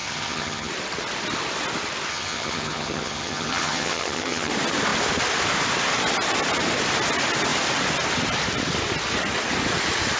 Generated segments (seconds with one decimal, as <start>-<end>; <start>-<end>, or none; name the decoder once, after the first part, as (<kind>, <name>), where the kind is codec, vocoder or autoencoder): 0.0-0.7 (vocoder, HiFi-GAN); 2.1-4.5